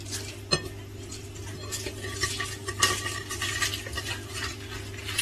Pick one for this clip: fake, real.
real